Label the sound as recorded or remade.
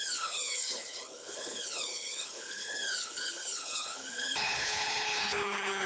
remade